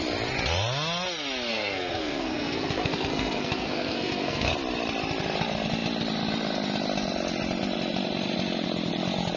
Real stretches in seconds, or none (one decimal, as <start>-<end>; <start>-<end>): 0.0-1.5; 4.5-9.4